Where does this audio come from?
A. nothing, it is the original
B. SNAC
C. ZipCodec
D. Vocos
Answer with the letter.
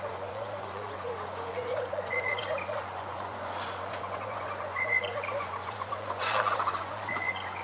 D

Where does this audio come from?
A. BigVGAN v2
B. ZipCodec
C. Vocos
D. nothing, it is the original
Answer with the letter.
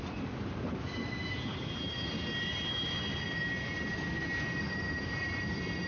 D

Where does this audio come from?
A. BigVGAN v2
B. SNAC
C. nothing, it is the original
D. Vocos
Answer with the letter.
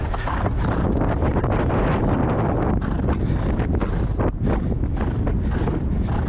C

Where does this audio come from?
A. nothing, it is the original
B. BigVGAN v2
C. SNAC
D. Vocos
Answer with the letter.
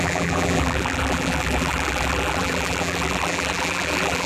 B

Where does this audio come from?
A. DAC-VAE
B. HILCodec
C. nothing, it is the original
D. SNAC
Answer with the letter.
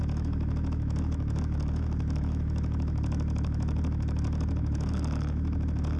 A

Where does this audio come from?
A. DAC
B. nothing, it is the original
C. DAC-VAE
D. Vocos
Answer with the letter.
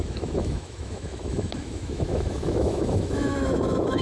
C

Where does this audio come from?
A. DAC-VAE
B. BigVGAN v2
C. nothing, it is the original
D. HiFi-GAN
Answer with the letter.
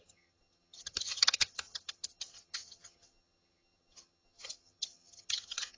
D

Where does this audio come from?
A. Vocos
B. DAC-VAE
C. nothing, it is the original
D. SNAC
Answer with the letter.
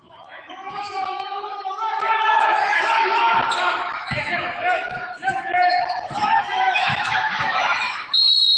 B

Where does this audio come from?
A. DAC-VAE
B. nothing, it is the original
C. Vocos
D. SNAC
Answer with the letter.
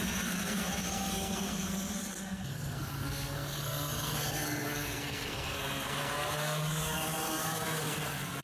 D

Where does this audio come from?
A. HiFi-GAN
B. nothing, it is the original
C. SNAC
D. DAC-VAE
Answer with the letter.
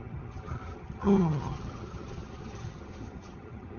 A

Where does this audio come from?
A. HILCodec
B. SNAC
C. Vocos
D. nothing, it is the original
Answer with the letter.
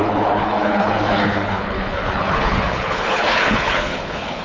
A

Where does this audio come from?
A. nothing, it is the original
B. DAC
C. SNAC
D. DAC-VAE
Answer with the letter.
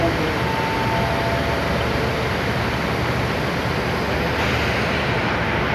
A